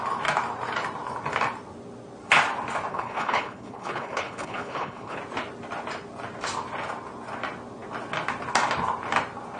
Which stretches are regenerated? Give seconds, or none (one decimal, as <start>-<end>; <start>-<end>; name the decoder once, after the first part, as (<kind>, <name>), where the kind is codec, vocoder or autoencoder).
2.9-5.2 (codec, HILCodec)